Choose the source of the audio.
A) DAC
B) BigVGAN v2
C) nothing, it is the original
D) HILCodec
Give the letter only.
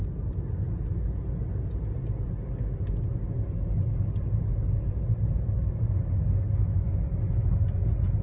C